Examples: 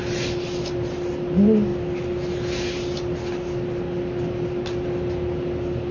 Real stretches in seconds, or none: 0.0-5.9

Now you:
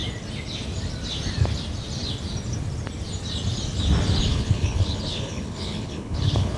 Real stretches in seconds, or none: 0.0-4.3